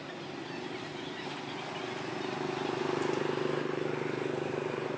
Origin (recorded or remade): recorded